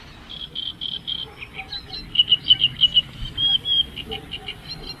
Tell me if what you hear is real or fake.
real